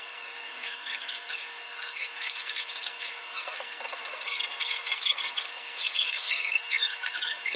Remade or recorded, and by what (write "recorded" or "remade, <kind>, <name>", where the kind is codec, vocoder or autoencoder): remade, codec, SNAC